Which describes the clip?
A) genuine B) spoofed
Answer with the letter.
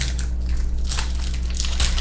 A